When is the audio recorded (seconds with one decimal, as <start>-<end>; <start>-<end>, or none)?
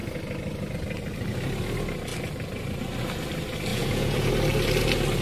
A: 0.0-3.7; 4.3-5.2